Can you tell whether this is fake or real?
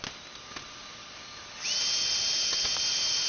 real